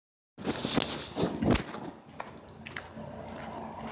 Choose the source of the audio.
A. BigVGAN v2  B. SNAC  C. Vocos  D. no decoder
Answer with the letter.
D